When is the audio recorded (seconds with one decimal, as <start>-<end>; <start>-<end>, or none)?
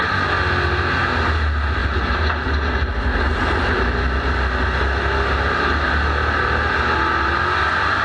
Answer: 0.0-8.0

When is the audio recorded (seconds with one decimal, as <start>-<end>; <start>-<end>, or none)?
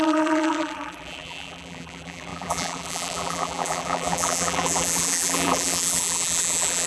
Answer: none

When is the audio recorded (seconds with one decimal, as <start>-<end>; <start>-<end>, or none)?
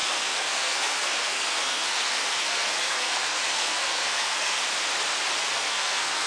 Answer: 4.6-5.5